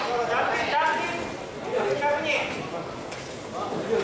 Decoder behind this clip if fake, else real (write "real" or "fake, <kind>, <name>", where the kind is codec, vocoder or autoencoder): real